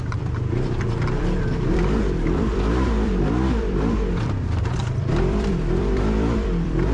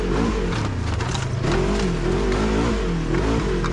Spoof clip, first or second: first